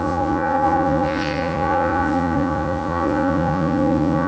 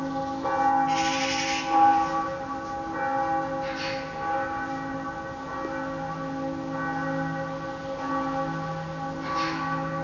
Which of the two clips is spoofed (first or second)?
first